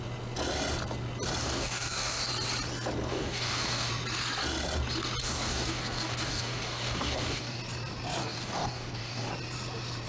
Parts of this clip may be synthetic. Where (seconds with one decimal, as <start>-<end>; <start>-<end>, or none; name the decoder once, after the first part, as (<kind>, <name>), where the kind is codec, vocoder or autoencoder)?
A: 1.4-2.3 (codec, DAC); 3.1-3.9; 5.2-7.6; 8.2-9.3